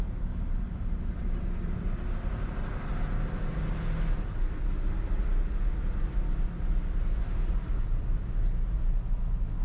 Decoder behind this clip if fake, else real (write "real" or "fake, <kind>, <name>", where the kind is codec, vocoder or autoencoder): real